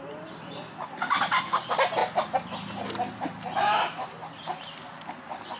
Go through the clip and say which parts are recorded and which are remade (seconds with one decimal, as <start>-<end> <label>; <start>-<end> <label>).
0.0-5.6 recorded